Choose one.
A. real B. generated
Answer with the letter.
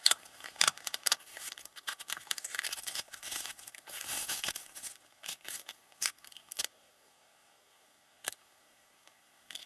B